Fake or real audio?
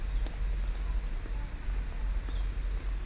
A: real